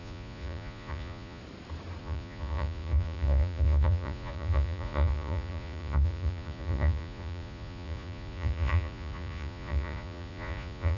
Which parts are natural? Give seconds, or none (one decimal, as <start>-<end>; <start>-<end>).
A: 1.4-2.0